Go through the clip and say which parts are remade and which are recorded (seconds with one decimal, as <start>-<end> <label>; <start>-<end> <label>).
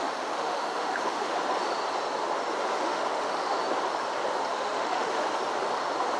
0.0-1.3 remade; 1.3-2.8 recorded; 2.8-3.6 remade; 3.6-4.5 recorded; 4.5-5.1 remade; 5.1-6.2 recorded